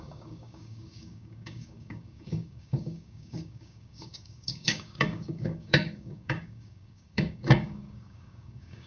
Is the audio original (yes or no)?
no